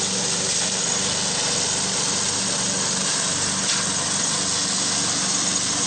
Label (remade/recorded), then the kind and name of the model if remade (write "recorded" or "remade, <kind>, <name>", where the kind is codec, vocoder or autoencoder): recorded